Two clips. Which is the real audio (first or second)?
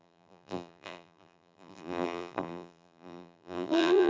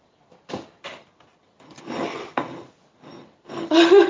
second